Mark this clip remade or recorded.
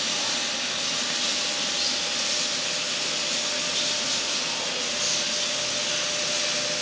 recorded